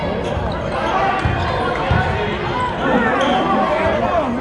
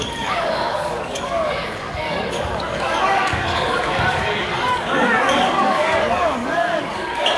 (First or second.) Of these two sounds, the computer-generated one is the second